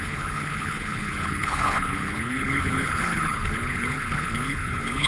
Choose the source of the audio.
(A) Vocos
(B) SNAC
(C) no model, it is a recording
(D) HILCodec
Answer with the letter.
D